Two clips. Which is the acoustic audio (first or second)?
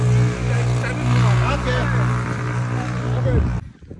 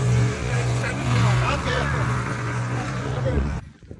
first